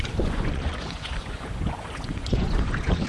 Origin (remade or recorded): remade